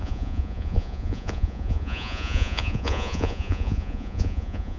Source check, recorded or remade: remade